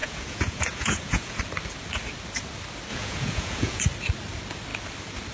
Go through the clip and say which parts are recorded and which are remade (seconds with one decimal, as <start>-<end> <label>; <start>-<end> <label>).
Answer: 0.0-1.4 remade; 1.4-2.9 recorded; 2.9-3.8 remade; 3.8-5.3 recorded